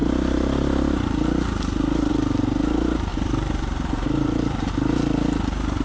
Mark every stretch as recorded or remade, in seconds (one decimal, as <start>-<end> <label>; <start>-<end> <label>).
0.0-3.1 recorded; 3.1-4.7 remade; 4.7-5.8 recorded